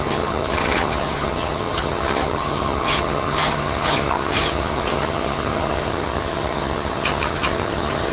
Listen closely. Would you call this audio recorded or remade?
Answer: remade